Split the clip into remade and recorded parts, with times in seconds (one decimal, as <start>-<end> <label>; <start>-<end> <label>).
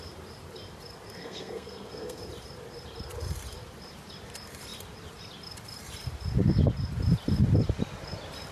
0.0-1.2 recorded; 1.2-2.2 remade; 2.2-8.5 recorded